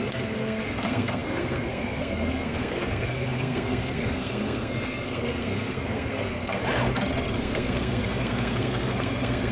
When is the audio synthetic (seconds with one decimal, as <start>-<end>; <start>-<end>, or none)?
0.0-6.6; 7.3-9.5

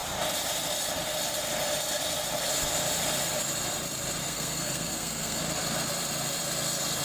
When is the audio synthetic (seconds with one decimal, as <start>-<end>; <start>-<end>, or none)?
4.2-5.4

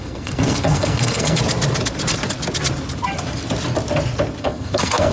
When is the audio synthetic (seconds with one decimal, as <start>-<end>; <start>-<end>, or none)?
0.0-1.4; 4.4-5.1

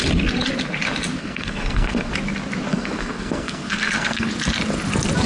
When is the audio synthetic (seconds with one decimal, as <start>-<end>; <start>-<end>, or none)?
1.2-2.1; 2.7-4.3

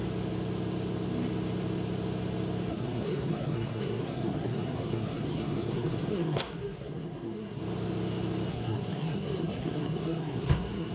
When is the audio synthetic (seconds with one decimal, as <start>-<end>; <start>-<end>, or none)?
2.7-7.6; 8.5-10.9